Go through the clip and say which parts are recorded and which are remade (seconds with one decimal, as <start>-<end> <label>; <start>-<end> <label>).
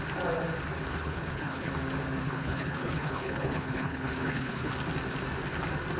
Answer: 0.0-0.9 recorded; 0.9-1.7 remade; 1.7-2.2 recorded; 2.2-4.7 remade; 4.7-6.0 recorded